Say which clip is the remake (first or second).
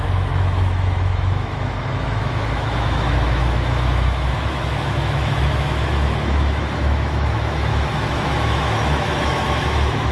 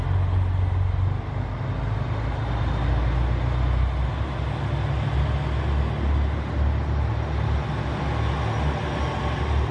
first